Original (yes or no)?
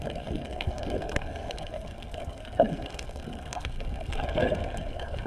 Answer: no